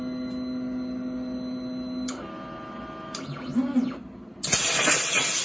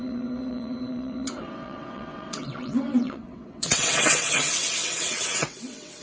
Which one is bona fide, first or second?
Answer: first